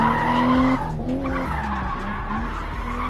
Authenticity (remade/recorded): recorded